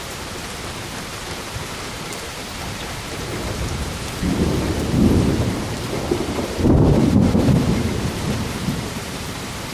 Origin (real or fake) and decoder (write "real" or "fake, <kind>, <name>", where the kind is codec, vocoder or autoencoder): fake, vocoder, BigVGAN v2